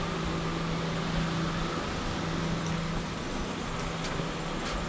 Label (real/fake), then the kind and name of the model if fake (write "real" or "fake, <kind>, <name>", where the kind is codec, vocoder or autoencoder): real